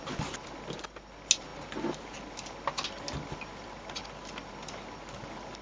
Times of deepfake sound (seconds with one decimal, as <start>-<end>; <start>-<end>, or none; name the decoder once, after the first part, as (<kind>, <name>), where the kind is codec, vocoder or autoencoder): none